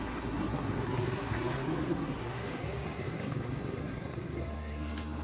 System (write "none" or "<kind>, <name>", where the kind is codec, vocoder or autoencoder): codec, SNAC